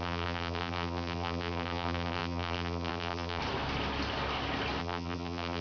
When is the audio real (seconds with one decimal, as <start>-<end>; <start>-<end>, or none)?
3.4-4.8